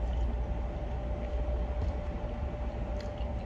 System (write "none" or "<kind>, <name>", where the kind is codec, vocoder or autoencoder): none